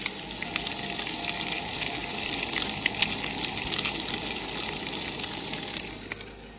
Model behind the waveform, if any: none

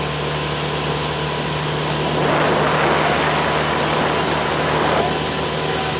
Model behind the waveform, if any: none